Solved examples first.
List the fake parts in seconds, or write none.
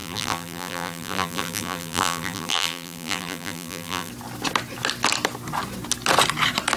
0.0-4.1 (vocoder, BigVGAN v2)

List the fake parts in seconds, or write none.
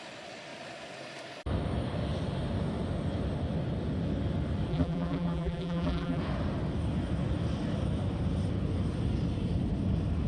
4.7-6.2 (vocoder, BigVGAN v2)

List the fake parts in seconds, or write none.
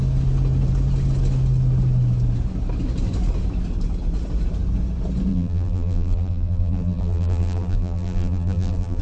5.3-9.0 (vocoder, BigVGAN v2)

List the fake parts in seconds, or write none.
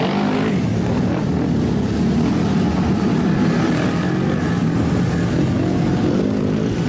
none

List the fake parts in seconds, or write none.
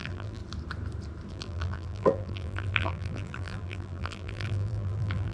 0.0-0.4 (vocoder, BigVGAN v2); 1.3-5.3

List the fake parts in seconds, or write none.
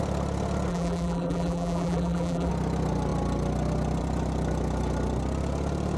0.7-2.5 (vocoder, BigVGAN v2)